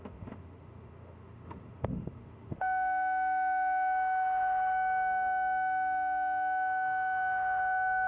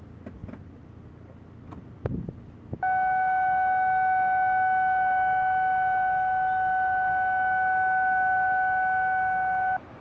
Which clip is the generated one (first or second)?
first